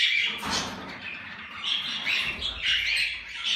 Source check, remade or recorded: recorded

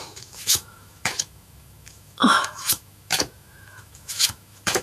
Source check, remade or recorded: remade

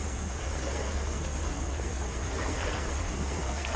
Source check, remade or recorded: remade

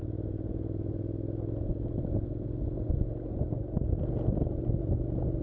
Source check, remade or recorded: recorded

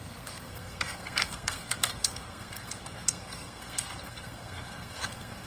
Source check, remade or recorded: remade